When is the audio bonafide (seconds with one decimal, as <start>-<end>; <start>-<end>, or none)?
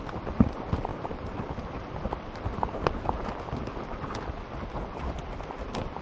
0.0-6.0